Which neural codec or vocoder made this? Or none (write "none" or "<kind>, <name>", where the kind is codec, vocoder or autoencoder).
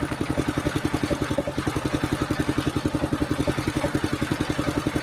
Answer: none